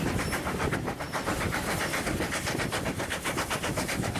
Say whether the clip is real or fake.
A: real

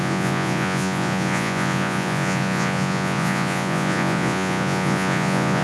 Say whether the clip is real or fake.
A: fake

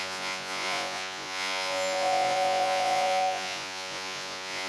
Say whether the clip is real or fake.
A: fake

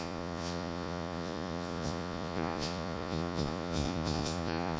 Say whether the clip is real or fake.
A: fake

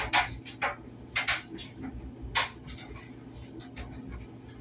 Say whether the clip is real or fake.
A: real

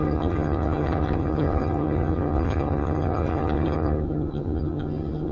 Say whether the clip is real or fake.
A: fake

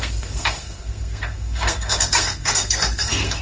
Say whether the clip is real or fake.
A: fake